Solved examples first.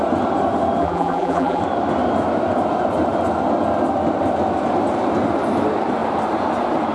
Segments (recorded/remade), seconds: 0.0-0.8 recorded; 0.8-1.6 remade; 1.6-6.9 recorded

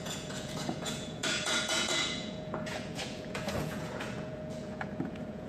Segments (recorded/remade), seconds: 0.0-5.5 remade

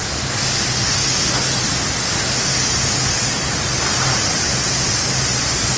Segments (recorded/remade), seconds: 0.0-5.8 recorded